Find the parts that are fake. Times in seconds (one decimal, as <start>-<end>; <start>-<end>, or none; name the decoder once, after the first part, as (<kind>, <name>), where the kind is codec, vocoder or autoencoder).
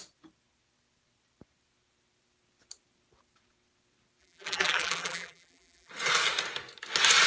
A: 4.2-5.9 (vocoder, BigVGAN v2)